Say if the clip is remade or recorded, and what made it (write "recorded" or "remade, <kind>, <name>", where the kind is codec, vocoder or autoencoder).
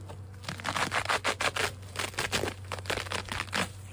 recorded